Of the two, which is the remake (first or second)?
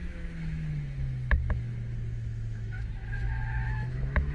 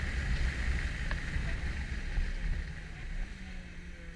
first